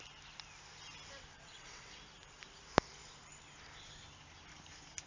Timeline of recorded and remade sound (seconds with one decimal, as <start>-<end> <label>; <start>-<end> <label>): 0.0-1.3 recorded; 1.3-1.9 remade; 1.9-5.1 recorded